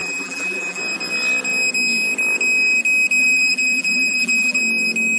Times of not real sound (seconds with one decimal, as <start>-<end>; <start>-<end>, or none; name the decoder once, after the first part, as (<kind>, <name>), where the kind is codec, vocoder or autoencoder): 0.0-0.8 (vocoder, BigVGAN v2); 3.2-4.6